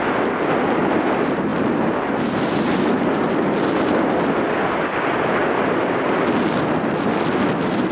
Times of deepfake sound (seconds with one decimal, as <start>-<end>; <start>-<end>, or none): none